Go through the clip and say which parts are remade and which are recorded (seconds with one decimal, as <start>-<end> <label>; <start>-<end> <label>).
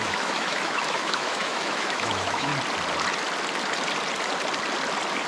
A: 0.0-2.5 remade; 2.5-5.3 recorded